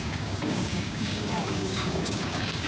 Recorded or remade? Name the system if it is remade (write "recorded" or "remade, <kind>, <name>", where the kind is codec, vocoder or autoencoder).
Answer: remade, codec, DAC